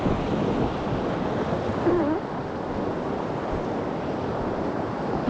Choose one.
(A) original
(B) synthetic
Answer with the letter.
B